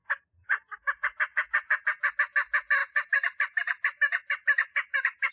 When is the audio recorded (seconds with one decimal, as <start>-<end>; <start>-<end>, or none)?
2.1-2.8